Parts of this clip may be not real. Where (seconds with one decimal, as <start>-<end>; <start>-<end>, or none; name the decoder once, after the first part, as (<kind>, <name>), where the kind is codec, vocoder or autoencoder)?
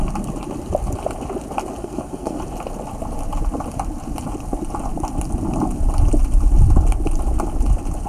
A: 1.8-2.4 (codec, SNAC)